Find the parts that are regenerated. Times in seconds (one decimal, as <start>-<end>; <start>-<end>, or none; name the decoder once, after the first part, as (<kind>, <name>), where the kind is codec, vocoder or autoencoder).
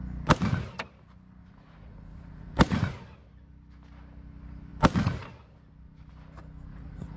1.4-2.9 (vocoder, Vocos); 6.7-7.2